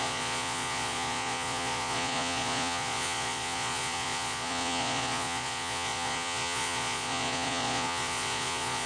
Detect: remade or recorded remade